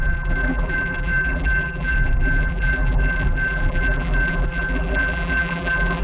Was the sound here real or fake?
fake